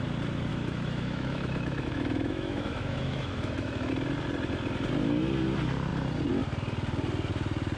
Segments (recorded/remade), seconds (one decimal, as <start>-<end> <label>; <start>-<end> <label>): 0.0-0.5 recorded; 0.5-3.9 remade; 3.9-7.8 recorded